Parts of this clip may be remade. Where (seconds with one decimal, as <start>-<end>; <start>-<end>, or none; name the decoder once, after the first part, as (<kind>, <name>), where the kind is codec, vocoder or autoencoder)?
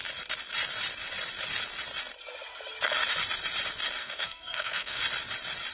4.0-5.0 (codec, SNAC)